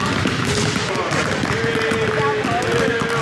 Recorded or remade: recorded